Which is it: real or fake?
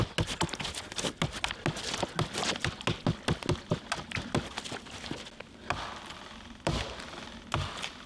real